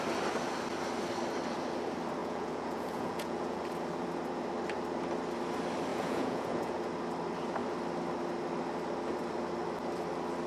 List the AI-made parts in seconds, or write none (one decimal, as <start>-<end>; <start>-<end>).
2.2-3.6; 5.9-6.8